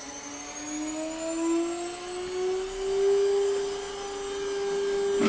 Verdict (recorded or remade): recorded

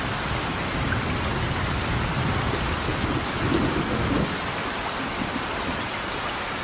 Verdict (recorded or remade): recorded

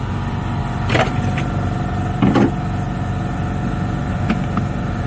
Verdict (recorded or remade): recorded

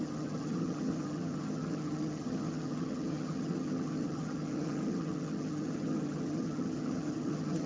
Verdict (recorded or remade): remade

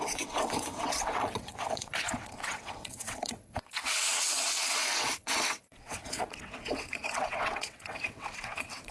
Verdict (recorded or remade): remade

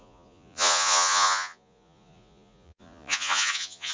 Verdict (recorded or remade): remade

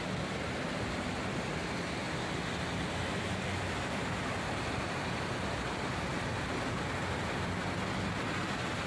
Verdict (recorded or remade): recorded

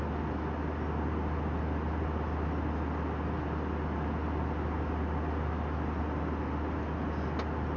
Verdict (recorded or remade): recorded